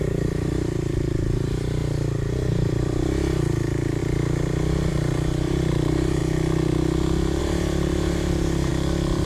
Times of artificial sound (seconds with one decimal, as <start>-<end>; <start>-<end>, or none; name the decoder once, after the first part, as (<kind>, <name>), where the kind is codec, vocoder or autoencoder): 0.0-1.8 (vocoder, BigVGAN v2); 2.5-6.2; 7.4-8.7